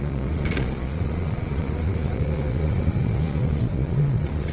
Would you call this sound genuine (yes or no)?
no